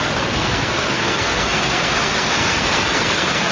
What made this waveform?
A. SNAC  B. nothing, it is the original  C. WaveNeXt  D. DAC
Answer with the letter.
A